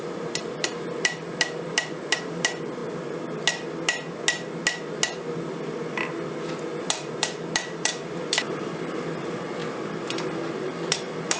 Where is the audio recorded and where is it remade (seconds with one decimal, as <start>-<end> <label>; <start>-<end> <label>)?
0.0-2.8 remade; 2.8-6.8 recorded; 6.8-9.6 remade; 9.6-10.5 recorded; 10.5-11.4 remade